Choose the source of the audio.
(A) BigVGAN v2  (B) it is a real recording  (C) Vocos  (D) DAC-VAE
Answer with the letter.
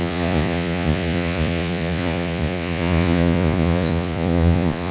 C